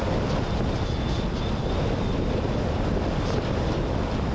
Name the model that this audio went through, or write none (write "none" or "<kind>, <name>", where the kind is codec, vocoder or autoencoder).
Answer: none